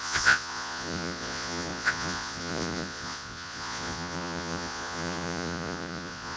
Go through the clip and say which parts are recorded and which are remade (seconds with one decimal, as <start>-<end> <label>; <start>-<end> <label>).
0.0-6.4 remade